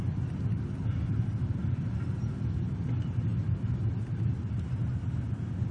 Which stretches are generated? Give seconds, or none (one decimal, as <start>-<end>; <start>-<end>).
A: none